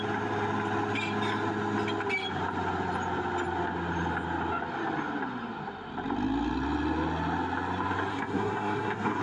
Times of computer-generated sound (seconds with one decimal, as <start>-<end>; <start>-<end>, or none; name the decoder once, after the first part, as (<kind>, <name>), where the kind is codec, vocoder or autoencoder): 8.1-9.2 (codec, SNAC)